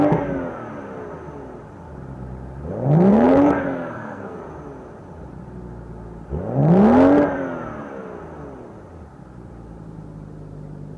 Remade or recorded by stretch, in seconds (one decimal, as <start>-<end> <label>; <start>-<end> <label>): 0.0-3.1 recorded; 3.1-4.4 remade; 4.4-11.0 recorded